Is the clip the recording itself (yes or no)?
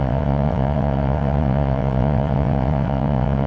no